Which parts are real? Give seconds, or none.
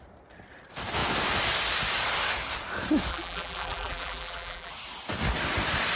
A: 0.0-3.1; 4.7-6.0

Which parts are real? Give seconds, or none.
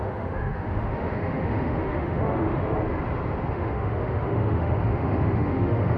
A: 2.6-3.5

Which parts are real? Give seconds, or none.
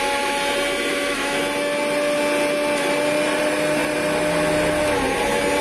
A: 0.0-0.9; 1.4-5.6